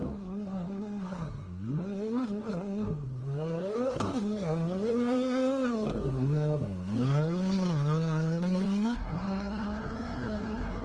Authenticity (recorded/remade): remade